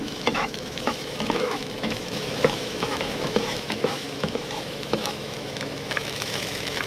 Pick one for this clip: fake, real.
fake